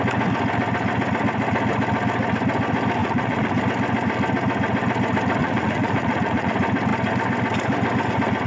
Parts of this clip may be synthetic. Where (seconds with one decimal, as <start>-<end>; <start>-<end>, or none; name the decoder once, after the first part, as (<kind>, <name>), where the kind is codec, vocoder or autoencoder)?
3.0-3.6 (vocoder, Vocos); 5.4-6.5